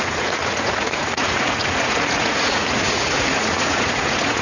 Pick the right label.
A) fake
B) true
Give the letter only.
A